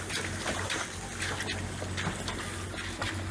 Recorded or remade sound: recorded